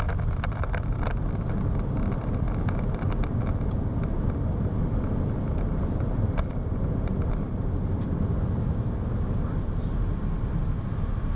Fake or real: fake